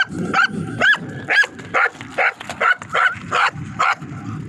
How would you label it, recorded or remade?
recorded